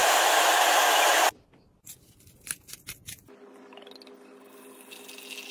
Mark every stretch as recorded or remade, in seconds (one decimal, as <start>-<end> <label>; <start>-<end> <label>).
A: 0.0-5.5 recorded